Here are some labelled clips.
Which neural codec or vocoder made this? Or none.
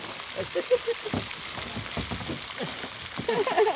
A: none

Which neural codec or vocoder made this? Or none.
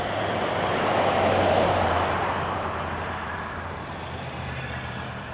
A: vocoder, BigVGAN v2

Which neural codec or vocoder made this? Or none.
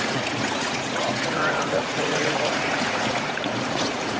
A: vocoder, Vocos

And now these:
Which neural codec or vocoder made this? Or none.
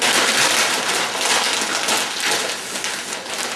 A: none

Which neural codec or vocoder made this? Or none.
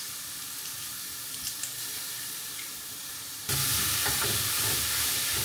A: none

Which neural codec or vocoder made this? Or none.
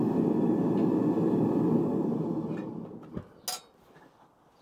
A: none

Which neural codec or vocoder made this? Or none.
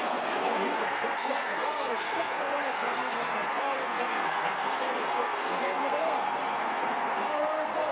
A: codec, SNAC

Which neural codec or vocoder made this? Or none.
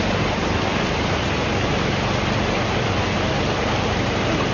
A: none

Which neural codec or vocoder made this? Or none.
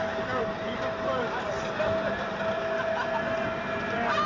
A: none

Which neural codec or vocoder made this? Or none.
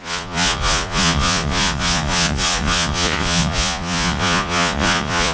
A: vocoder, Vocos